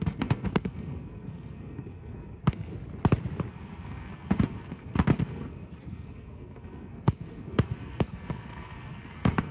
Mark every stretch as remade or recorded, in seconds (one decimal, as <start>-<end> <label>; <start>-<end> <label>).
0.0-2.7 remade; 2.7-3.5 recorded; 3.5-9.5 remade

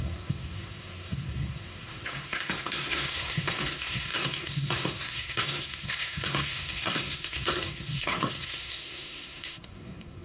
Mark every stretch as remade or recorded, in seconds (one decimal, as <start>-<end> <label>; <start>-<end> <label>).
0.0-10.2 remade

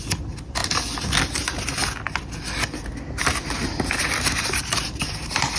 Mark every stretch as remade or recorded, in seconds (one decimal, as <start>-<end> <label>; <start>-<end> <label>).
0.0-5.6 recorded

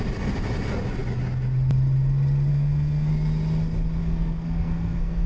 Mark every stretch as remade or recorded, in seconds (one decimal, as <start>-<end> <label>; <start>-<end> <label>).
0.0-2.5 recorded; 2.5-3.1 remade; 3.1-4.0 recorded; 4.0-5.3 remade

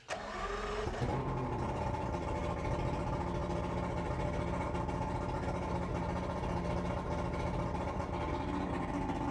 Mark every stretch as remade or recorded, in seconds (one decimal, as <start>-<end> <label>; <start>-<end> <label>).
0.0-9.3 recorded

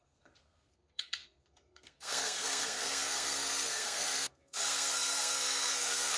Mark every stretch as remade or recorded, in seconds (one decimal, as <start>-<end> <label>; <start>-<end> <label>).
0.0-6.2 remade

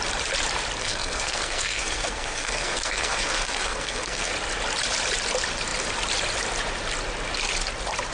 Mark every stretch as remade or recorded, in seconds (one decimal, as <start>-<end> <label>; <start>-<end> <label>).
0.0-0.8 recorded; 0.8-4.3 remade; 4.3-8.1 recorded

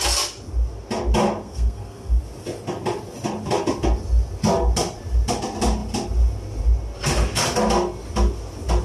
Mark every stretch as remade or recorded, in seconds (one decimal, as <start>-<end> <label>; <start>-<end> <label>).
0.0-1.4 recorded; 1.4-2.2 remade; 2.2-8.8 recorded